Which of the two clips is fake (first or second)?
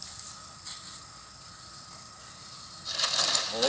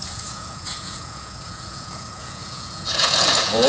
second